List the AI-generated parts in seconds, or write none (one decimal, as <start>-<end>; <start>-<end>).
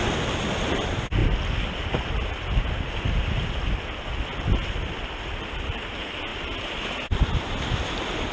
0.0-1.2; 5.2-6.3; 7.3-8.3